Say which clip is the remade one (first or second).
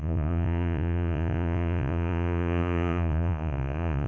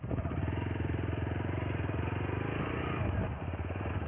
first